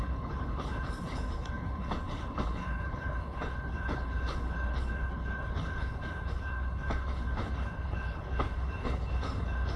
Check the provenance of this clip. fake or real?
fake